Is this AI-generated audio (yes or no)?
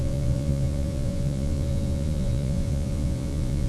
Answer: yes